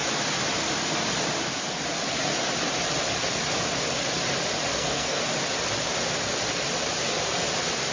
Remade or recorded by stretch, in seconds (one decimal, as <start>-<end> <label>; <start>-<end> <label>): 0.0-4.7 recorded; 4.7-5.2 remade; 5.2-7.9 recorded